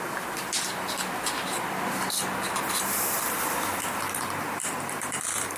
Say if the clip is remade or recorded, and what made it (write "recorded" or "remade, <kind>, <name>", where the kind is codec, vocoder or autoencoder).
remade, vocoder, BigVGAN v2